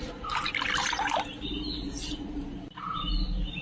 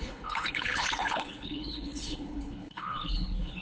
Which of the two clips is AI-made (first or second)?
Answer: second